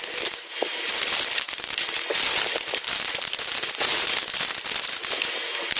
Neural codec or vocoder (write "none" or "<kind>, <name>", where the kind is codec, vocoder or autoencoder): none